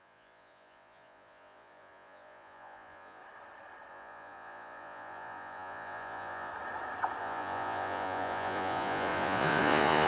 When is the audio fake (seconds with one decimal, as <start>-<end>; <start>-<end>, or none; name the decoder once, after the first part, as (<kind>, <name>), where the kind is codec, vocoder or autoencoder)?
0.0-3.2 (vocoder, Vocos); 3.9-6.5; 7.2-10.1